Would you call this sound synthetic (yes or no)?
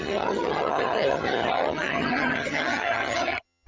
yes